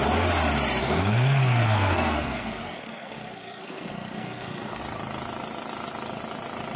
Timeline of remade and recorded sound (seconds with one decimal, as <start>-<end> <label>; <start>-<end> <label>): 0.0-0.8 recorded; 0.8-4.8 remade; 4.8-6.8 recorded